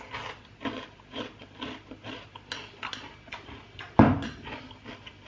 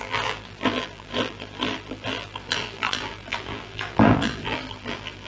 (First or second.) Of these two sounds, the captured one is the first